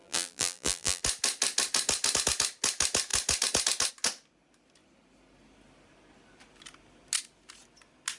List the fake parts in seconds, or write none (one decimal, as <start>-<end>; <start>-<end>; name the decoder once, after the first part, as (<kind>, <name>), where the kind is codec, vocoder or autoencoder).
0.0-1.0 (vocoder, BigVGAN v2)